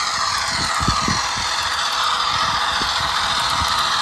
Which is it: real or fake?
real